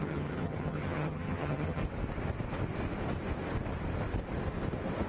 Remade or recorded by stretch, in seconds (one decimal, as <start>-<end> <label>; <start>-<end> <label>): 0.0-1.8 remade; 1.8-5.1 recorded